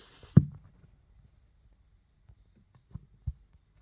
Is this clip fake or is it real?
real